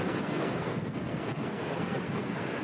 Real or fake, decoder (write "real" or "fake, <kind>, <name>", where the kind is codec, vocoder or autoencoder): fake, codec, SNAC